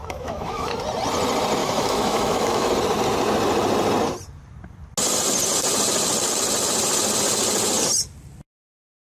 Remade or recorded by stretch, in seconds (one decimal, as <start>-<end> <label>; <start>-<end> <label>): 0.0-0.7 remade; 0.7-1.6 recorded; 1.6-2.7 remade; 2.7-9.2 recorded